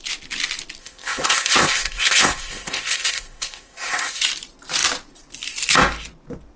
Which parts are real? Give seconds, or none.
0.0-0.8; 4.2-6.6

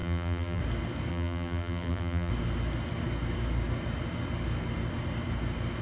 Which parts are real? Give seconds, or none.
0.6-1.1; 2.3-5.8